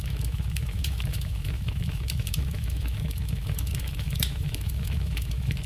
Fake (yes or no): yes